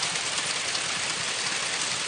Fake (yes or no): no